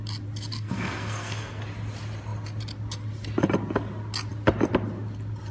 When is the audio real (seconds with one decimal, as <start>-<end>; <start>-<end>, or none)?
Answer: 0.0-0.5; 1.6-5.5